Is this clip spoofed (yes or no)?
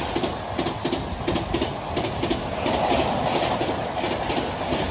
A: no